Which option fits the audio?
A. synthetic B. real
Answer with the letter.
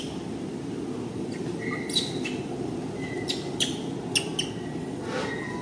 B